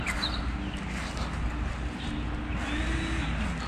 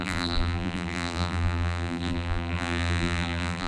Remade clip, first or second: second